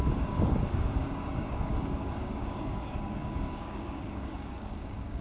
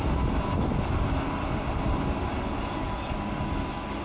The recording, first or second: second